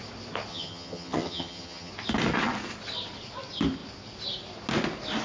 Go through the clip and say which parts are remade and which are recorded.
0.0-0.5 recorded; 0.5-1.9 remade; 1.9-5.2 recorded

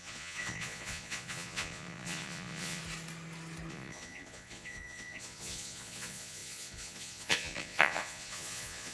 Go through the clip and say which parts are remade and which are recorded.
0.0-2.8 remade; 2.8-3.7 recorded; 3.7-8.9 remade